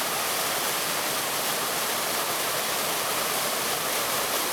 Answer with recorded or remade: recorded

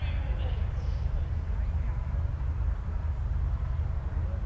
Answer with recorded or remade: recorded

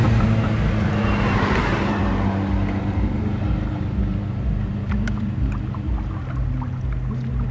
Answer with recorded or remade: recorded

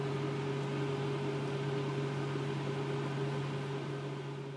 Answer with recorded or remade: recorded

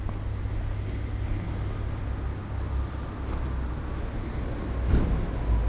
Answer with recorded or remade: recorded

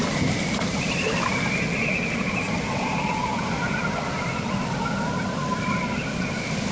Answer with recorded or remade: recorded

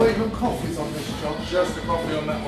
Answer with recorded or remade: recorded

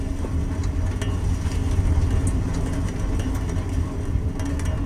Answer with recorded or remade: recorded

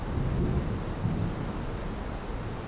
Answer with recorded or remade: recorded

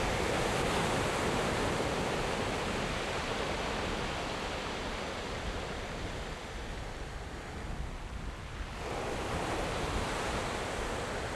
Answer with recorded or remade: recorded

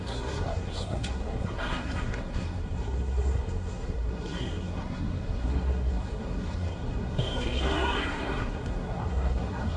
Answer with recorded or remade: remade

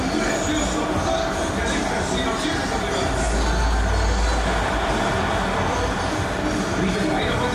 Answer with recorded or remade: recorded